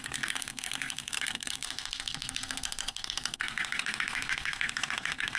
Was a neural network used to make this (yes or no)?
yes